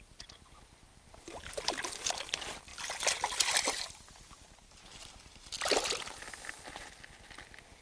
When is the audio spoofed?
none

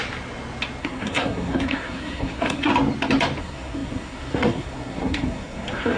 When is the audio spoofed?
0.8-2.7 (codec, SNAC); 3.4-6.0